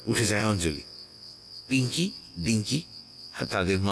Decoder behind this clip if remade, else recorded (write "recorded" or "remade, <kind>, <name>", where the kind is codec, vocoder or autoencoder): remade, vocoder, WaveNeXt